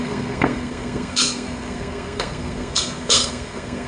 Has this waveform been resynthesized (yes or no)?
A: yes